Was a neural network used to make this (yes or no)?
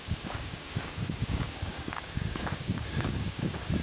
yes